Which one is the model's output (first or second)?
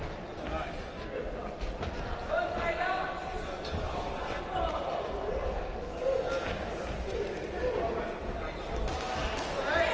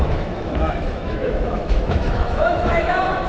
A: second